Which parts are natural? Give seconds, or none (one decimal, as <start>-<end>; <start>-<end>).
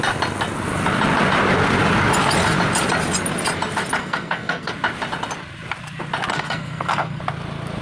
0.0-4.0; 4.7-6.3; 7.2-7.8